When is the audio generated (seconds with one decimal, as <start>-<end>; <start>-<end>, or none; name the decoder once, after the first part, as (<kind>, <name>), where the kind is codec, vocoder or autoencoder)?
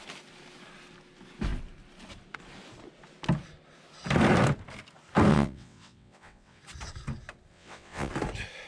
5.3-6.6 (vocoder, WaveNeXt); 7.5-8.1